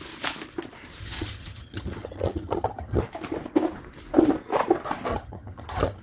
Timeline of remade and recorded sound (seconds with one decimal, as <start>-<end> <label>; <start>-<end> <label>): 0.0-1.0 recorded; 1.0-3.0 remade; 3.0-5.1 recorded; 5.1-6.0 remade